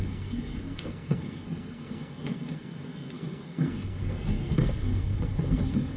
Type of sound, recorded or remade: remade